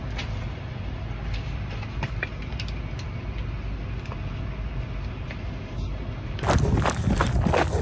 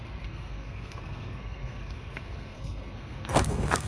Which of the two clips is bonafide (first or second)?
first